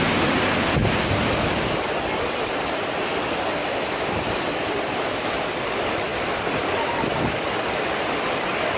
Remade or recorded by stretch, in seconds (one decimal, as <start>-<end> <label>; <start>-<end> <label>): 0.0-0.8 recorded; 0.8-3.0 remade; 3.0-3.6 recorded; 3.6-4.7 remade; 4.7-8.8 recorded

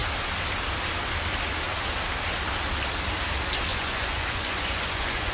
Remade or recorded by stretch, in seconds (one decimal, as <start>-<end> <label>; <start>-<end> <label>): 0.0-3.7 recorded; 3.7-5.3 remade

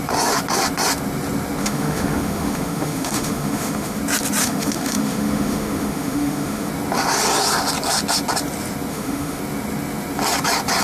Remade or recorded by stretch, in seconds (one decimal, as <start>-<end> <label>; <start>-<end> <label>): 0.0-1.6 recorded; 1.6-4.0 remade; 4.0-4.4 recorded; 4.4-6.7 remade; 6.7-8.9 recorded; 8.9-9.4 remade; 9.4-10.8 recorded

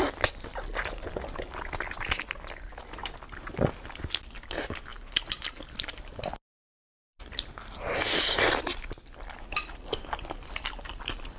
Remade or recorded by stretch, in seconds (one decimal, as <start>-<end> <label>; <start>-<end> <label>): 0.0-11.4 recorded

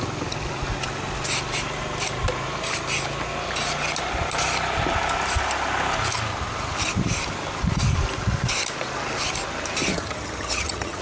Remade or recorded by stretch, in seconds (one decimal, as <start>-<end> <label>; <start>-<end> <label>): 0.0-9.9 recorded; 9.9-11.0 remade

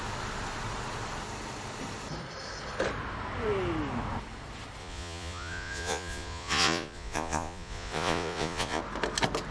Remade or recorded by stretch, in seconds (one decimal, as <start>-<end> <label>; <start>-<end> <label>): 0.0-4.8 recorded; 4.8-8.8 remade; 8.8-9.5 recorded